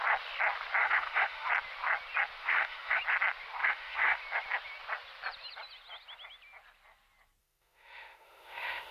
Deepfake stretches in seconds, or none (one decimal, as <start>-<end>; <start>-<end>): 0.8-1.5; 2.4-3.0; 3.6-4.2; 7.4-8.9

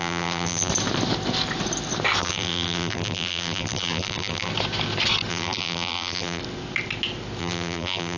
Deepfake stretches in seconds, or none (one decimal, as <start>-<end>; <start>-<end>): 0.0-0.7; 2.2-4.5; 5.3-6.4; 7.4-8.2

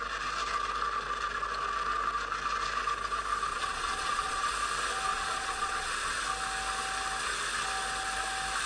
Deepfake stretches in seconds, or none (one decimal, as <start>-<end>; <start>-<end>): 3.5-4.5; 5.1-6.2

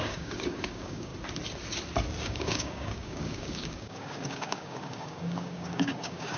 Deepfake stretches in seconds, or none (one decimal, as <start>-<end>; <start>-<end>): 0.0-1.1; 2.2-6.4

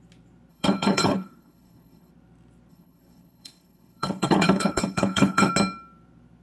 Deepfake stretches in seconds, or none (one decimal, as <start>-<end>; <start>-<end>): 0.5-2.1; 2.7-5.5

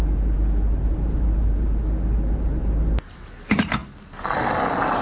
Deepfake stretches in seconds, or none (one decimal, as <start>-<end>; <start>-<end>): none